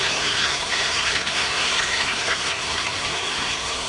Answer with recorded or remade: remade